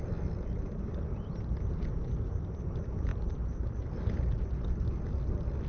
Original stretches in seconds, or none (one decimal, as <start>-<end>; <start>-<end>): 0.0-5.7